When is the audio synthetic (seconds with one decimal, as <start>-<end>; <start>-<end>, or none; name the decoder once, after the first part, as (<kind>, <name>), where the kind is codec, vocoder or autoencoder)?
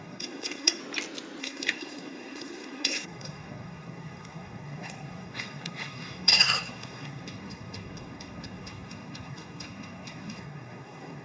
0.0-0.8 (codec, SNAC); 1.4-11.2